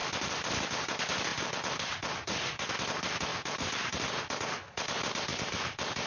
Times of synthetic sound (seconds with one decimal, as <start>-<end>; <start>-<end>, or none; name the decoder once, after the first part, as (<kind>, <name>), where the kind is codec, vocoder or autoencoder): 0.0-0.5 (vocoder, BigVGAN v2); 1.3-2.7; 3.3-4.1; 5.3-6.1